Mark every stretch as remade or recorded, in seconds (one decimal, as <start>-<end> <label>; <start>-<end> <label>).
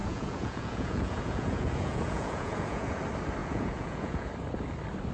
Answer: 0.0-3.0 remade; 3.0-3.4 recorded; 3.4-4.3 remade; 4.3-5.1 recorded